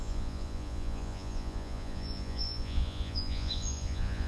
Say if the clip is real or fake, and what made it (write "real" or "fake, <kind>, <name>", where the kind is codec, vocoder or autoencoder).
fake, vocoder, Vocos